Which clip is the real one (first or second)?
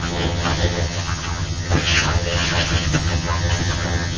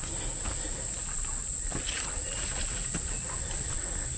second